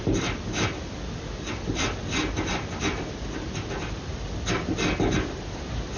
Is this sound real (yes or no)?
yes